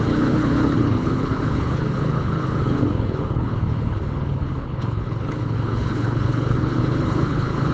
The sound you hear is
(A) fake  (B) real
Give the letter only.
A